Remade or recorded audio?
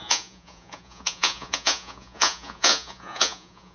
remade